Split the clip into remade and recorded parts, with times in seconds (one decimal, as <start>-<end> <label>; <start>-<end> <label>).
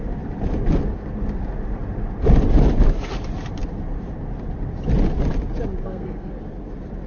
0.0-5.8 recorded; 5.8-6.4 remade; 6.4-7.1 recorded